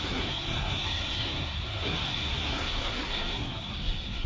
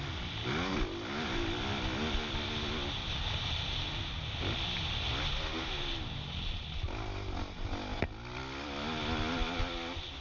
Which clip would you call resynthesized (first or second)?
first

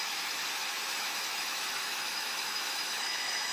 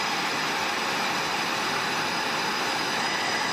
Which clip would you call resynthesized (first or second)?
first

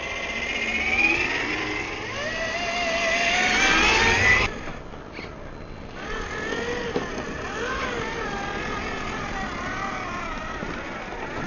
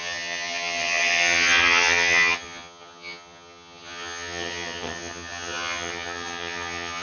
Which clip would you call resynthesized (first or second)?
second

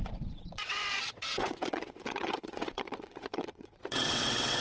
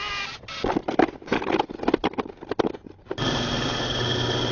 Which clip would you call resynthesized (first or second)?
first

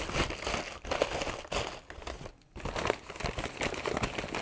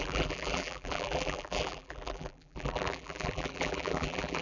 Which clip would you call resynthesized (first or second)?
second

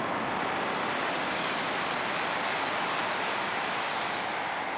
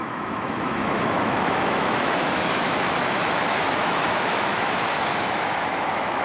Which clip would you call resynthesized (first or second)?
second